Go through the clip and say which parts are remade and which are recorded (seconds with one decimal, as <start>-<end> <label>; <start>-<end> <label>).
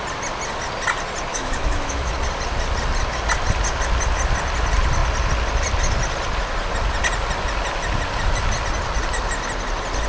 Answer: 0.0-1.3 recorded; 1.3-2.1 remade; 2.1-10.1 recorded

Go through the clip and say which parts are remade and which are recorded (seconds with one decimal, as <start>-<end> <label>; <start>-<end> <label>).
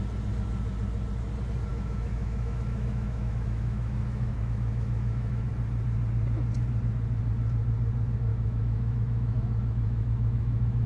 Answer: 0.0-1.7 recorded; 1.7-5.5 remade; 5.5-8.3 recorded; 8.3-10.9 remade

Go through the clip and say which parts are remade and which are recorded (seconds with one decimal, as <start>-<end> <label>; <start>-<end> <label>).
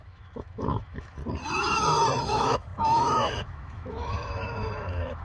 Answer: 0.0-1.2 remade; 1.2-2.2 recorded; 2.2-5.2 remade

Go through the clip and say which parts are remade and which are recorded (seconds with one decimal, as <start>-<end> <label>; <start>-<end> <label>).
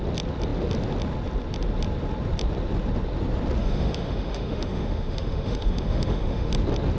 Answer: 0.0-3.6 recorded; 3.6-6.5 remade; 6.5-7.0 recorded